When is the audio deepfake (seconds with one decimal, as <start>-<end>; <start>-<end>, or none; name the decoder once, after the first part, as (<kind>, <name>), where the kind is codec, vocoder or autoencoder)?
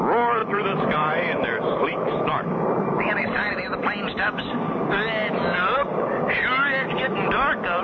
0.4-3.5 (vocoder, BigVGAN v2)